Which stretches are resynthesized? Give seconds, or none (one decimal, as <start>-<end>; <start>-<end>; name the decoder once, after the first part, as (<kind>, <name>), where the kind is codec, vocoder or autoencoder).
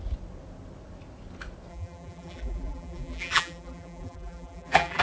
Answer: 1.7-5.0 (vocoder, BigVGAN v2)